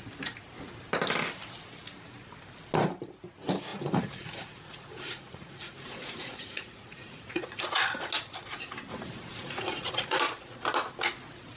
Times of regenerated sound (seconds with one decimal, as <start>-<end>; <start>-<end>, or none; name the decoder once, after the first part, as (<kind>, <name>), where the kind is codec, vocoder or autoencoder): 3.7-8.1 (vocoder, Vocos); 8.9-10.2